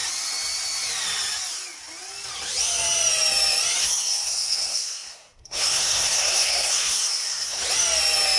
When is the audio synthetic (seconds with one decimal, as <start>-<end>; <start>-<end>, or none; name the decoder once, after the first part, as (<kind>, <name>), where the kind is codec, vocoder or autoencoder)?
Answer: 3.8-7.6 (codec, SNAC)